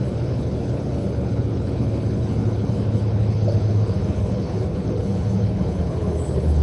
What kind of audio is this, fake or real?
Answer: fake